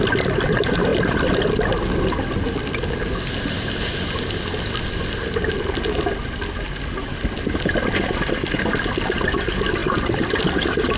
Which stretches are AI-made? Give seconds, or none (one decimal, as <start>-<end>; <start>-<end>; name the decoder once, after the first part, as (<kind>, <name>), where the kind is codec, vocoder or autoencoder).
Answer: 0.9-1.5 (vocoder, BigVGAN v2)